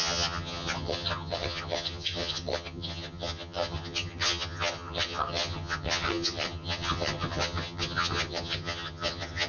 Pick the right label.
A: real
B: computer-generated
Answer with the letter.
B